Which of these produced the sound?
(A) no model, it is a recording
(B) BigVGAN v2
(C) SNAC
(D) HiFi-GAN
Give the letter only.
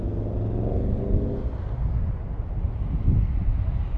A